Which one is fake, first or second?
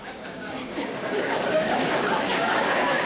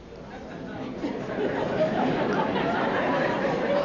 first